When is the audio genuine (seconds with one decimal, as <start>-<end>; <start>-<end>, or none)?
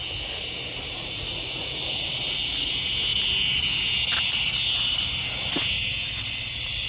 0.0-1.0; 2.7-6.9